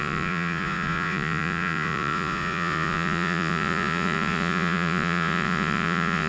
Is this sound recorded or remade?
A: remade